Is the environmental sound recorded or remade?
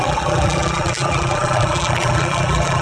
remade